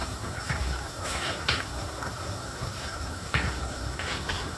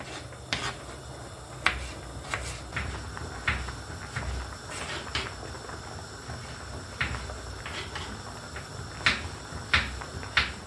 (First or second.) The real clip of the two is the second